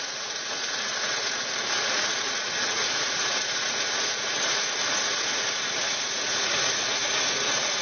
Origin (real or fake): fake